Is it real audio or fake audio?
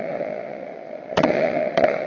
fake